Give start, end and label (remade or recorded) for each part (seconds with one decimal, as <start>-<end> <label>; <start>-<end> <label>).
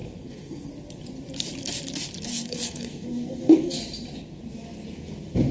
0.0-0.7 remade; 0.7-2.3 recorded; 2.3-3.8 remade; 3.8-5.5 recorded